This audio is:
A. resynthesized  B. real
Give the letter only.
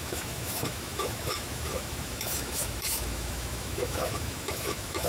A